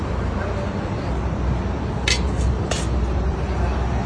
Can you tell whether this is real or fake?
real